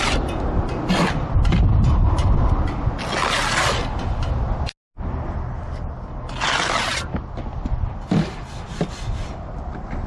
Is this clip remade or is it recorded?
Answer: recorded